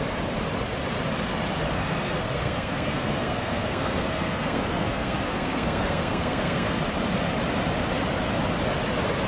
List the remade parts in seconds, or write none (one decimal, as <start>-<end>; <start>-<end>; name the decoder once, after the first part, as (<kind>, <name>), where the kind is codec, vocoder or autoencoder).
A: 1.7-6.8 (codec, SNAC)

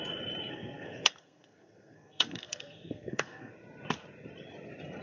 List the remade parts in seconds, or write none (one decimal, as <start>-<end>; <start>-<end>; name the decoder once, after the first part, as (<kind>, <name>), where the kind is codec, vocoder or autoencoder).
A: 0.5-3.5 (codec, SNAC)

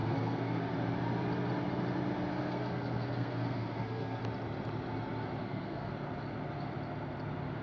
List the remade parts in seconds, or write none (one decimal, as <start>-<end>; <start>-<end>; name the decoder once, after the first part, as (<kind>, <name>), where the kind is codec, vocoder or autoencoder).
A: 0.0-0.7 (codec, SNAC); 2.3-4.2; 5.4-5.9

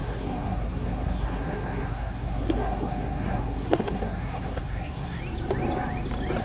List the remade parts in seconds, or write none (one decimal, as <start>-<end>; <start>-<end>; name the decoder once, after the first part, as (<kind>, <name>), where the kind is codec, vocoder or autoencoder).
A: 0.0-5.2 (codec, SNAC)